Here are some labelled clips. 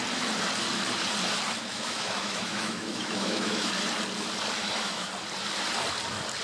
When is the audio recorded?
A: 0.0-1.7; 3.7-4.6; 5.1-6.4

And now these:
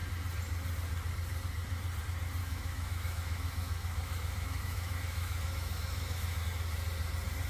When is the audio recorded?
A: 0.0-2.4; 6.4-7.5

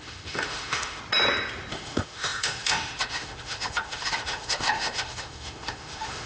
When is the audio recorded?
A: 1.0-1.7

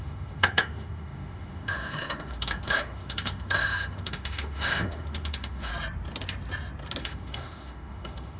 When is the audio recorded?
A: 5.7-7.0